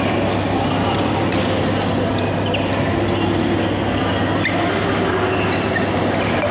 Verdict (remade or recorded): recorded